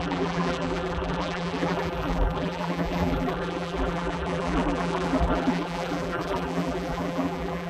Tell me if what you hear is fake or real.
fake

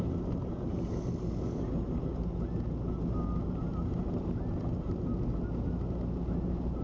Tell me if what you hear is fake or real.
real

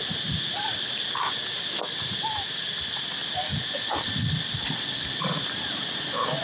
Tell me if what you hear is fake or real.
real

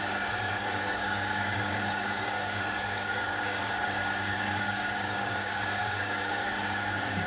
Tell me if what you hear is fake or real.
fake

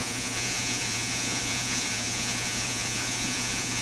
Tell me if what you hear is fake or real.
fake